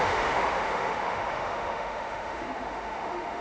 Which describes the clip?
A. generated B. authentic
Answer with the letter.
A